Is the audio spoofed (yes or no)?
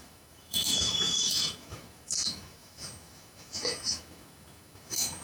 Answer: yes